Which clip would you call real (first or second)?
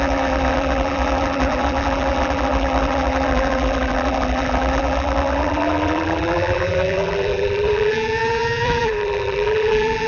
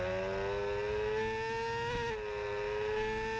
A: second